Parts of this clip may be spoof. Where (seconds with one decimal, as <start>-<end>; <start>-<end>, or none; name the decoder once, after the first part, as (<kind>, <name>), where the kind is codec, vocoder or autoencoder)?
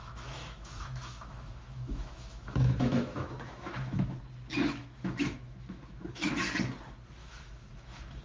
0.0-4.2 (autoencoder, DAC-VAE); 4.8-6.3; 7.2-8.2